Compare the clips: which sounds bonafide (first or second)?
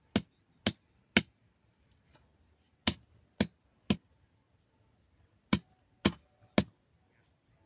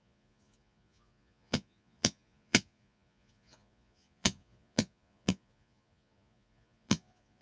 first